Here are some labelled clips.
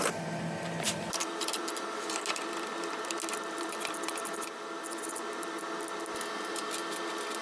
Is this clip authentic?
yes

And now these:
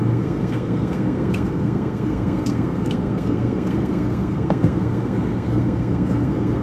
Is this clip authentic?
no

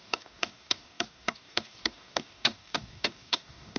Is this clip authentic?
no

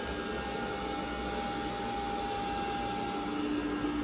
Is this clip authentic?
yes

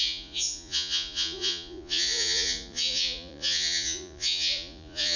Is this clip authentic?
no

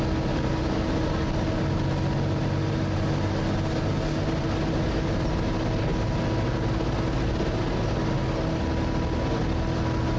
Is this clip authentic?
yes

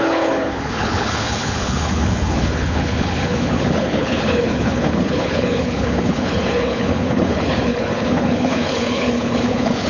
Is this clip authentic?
no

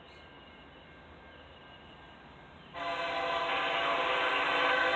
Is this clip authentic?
yes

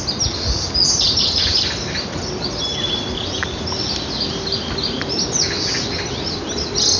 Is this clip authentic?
yes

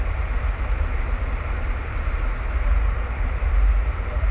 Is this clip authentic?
no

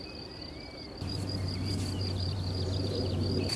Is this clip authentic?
no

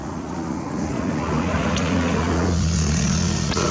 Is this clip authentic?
no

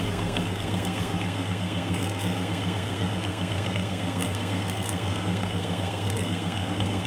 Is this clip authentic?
no